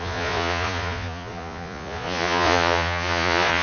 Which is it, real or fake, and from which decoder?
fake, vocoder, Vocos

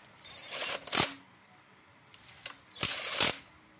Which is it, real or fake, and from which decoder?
real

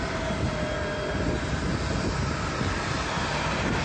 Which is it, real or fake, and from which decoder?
real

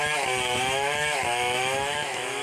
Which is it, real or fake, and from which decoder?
fake, autoencoder, DAC-VAE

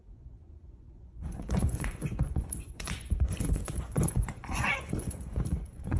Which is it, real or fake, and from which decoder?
fake, vocoder, Vocos